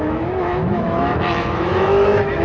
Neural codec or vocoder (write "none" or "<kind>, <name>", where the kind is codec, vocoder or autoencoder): autoencoder, DAC-VAE